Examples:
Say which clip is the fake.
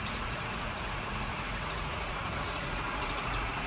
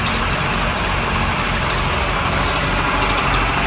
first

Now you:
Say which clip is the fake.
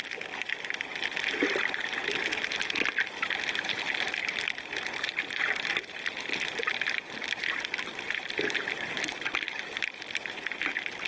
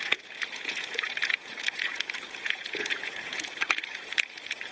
second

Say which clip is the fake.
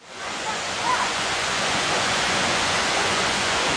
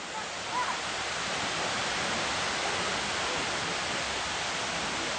first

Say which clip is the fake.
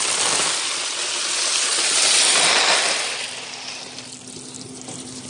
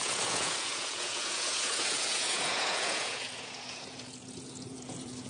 second